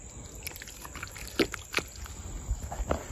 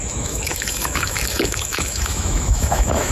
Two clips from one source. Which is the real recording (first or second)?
first